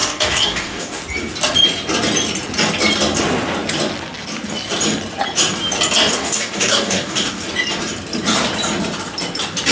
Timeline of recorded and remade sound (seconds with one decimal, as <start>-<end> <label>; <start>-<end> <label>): 0.0-1.0 remade; 1.0-6.1 recorded; 6.1-7.4 remade; 7.4-9.7 recorded